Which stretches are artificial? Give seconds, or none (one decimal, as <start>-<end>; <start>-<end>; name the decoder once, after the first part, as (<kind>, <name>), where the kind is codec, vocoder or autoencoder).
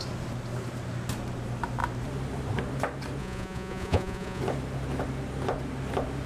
3.2-4.4 (vocoder, Vocos)